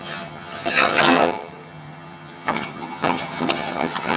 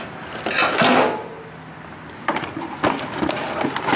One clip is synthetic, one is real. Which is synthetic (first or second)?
first